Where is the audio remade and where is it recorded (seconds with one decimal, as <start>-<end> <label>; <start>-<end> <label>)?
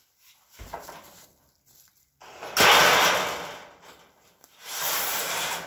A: 0.0-5.7 recorded